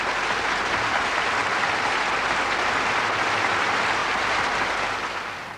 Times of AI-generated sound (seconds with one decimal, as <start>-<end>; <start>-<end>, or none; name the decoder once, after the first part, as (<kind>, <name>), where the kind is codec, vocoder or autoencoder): 4.0-4.9 (vocoder, BigVGAN v2)

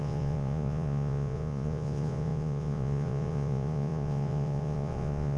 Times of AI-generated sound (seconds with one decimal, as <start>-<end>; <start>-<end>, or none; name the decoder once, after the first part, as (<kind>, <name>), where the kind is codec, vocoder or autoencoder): 0.0-5.4 (vocoder, Vocos)